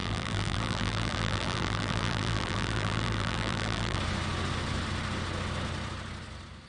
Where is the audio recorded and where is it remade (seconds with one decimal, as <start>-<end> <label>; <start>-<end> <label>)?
0.0-4.0 remade; 4.0-6.7 recorded